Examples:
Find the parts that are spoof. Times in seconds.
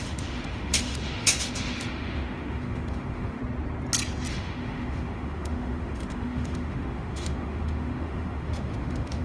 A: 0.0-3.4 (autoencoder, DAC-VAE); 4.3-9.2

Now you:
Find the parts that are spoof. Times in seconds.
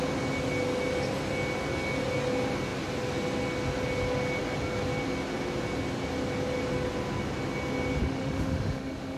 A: 8.0-9.2 (autoencoder, DAC-VAE)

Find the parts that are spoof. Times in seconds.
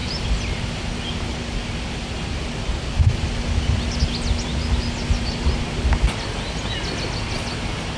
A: none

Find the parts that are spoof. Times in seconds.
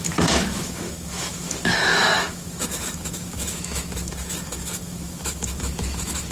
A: 0.0-6.3 (autoencoder, DAC-VAE)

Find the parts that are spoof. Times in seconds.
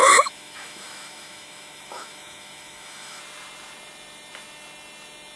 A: 0.0-3.2 (autoencoder, DAC-VAE)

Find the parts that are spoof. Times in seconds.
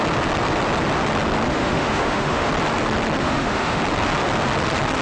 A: 1.5-2.5 (autoencoder, DAC-VAE); 3.2-3.8